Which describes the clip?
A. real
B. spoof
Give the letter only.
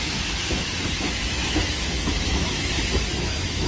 B